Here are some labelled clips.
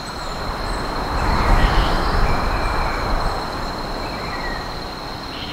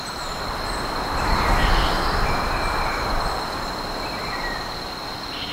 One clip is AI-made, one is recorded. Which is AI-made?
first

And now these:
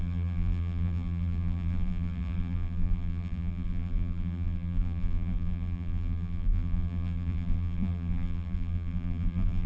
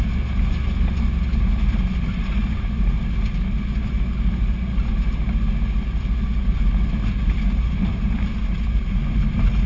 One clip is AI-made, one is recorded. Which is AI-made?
first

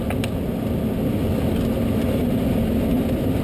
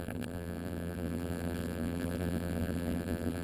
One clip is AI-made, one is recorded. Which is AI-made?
second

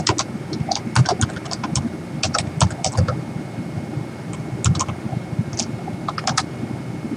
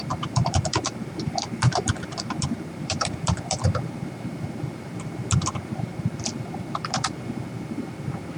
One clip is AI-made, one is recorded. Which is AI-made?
second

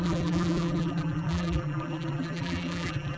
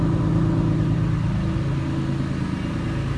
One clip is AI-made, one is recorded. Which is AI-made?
first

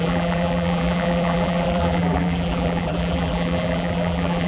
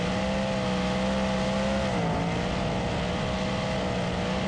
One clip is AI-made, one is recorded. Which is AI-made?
first